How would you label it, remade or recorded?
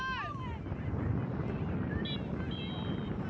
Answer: recorded